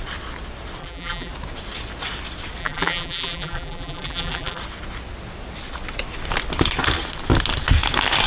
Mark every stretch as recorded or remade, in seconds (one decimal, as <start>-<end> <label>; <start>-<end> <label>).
0.0-0.8 recorded; 0.8-1.3 remade; 1.3-2.6 recorded; 2.6-4.6 remade; 4.6-8.3 recorded